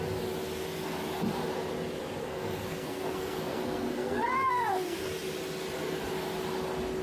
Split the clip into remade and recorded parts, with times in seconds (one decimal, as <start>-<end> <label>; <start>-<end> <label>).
0.0-2.2 recorded; 2.2-5.0 remade; 5.0-7.0 recorded